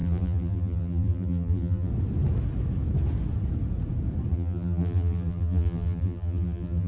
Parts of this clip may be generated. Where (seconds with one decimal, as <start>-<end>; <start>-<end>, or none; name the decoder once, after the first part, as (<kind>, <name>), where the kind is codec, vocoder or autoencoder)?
0.0-1.9 (vocoder, BigVGAN v2); 4.3-6.9